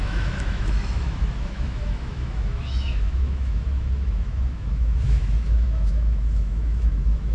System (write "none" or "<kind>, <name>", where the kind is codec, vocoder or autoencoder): autoencoder, DAC-VAE